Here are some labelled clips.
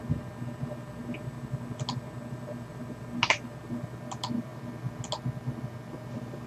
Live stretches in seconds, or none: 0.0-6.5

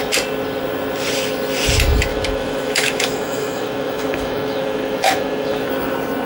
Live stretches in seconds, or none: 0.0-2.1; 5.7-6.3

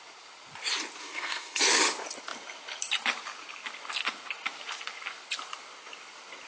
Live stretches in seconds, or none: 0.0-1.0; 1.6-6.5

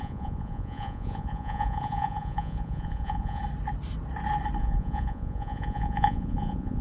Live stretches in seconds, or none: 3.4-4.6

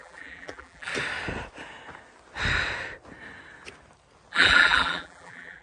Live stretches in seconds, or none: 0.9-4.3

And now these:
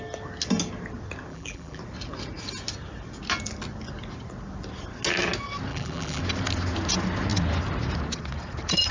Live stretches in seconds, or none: 0.0-1.3; 1.8-5.7; 6.2-8.9